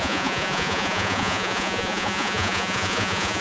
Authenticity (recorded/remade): remade